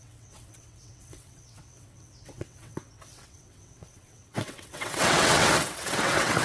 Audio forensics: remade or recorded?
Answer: remade